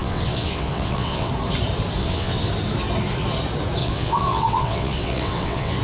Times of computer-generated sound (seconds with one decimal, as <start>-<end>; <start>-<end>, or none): 0.0-1.3; 2.0-2.5; 3.8-5.8